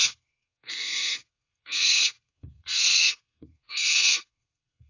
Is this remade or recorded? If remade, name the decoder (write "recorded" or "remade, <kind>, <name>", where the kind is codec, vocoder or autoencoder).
remade, codec, SNAC